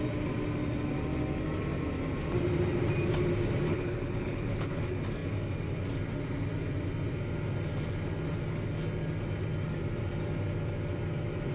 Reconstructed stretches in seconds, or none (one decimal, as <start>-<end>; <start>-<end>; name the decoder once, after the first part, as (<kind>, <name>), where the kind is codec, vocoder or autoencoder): 3.7-4.8 (codec, HILCodec)